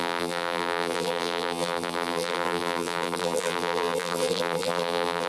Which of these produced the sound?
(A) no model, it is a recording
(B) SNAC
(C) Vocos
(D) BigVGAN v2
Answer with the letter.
D